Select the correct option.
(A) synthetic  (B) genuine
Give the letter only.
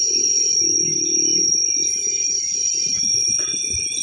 A